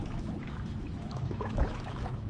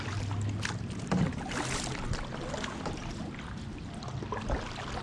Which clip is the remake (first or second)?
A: first